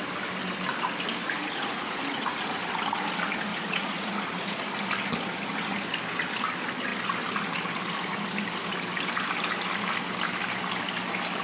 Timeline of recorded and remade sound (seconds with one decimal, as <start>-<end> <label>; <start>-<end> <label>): 0.0-1.2 recorded; 1.2-2.6 remade; 2.6-3.5 recorded; 3.5-4.1 remade; 4.1-11.4 recorded